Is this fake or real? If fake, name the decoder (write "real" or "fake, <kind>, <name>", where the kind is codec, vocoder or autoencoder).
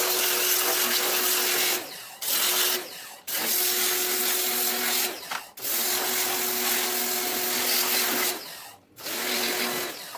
real